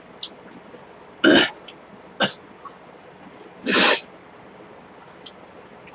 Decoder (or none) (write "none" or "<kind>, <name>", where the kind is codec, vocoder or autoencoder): none